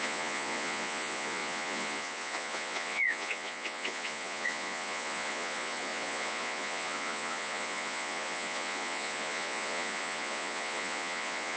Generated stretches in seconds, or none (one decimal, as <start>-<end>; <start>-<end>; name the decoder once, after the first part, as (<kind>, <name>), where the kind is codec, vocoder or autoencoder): 0.0-11.6 (vocoder, Vocos)